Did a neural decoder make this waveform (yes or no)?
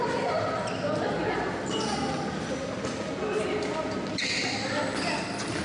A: no